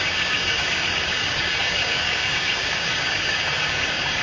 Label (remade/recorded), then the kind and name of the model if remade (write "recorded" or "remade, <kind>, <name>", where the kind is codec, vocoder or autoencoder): remade, codec, DAC